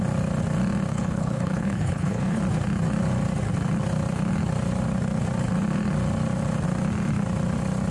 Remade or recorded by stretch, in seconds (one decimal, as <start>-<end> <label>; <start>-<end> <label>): 0.0-0.9 recorded; 0.9-2.4 remade; 2.4-7.9 recorded